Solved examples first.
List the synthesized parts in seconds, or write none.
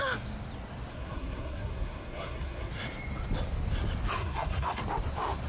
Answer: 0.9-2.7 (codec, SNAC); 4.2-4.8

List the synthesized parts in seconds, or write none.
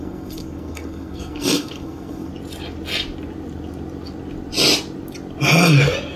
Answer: 0.0-2.3 (codec, SNAC)